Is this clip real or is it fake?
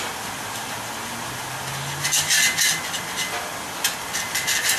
real